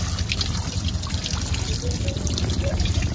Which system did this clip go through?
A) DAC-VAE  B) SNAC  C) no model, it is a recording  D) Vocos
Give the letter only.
C